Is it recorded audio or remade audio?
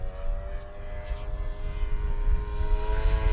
recorded